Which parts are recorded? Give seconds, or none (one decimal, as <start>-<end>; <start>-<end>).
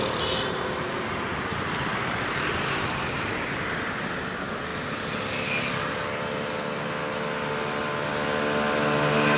0.0-9.4